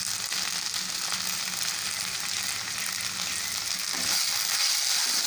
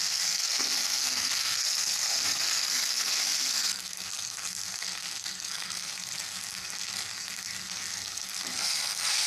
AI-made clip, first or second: second